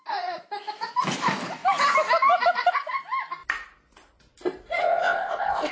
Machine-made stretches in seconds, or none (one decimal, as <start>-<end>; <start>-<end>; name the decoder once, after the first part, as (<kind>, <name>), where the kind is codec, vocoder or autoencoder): 4.8-5.7 (codec, ZipCodec)